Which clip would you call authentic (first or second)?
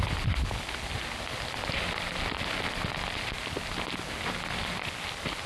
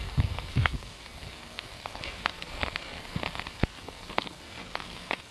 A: first